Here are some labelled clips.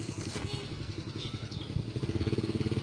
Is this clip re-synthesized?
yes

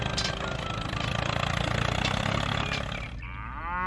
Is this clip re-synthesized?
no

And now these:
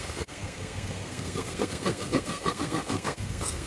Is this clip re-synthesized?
yes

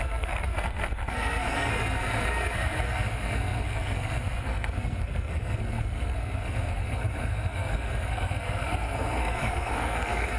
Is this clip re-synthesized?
yes